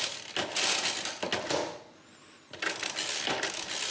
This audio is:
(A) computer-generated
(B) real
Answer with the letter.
B